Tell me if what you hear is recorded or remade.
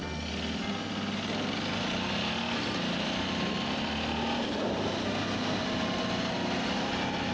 recorded